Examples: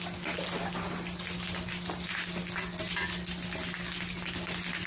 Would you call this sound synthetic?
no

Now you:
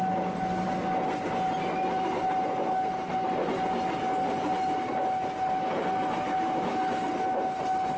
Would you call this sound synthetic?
no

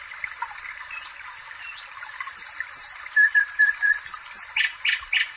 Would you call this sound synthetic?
no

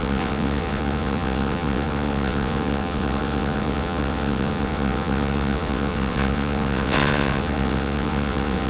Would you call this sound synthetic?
yes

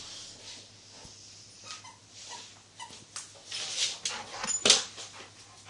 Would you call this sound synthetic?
no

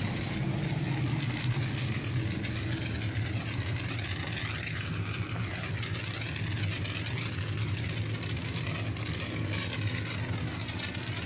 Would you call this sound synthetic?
no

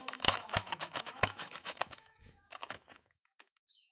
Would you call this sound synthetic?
yes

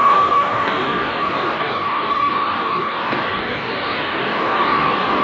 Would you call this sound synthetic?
yes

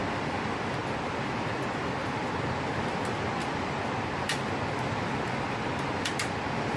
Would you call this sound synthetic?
no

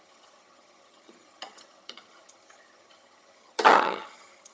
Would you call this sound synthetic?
yes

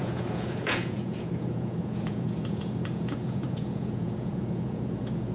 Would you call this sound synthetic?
yes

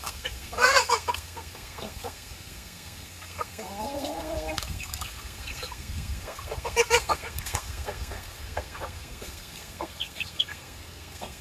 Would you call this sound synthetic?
yes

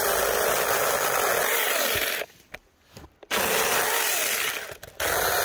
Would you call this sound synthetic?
no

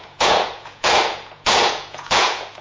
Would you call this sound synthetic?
yes